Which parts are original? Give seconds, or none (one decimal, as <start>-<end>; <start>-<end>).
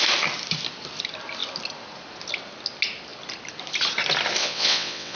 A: 0.0-4.4